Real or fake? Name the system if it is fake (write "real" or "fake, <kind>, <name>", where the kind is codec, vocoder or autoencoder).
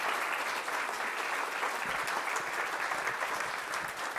real